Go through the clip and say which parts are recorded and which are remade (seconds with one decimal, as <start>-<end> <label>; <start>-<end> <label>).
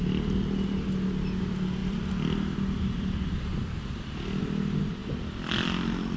0.0-1.8 recorded; 1.8-4.4 remade; 4.4-5.0 recorded; 5.0-6.2 remade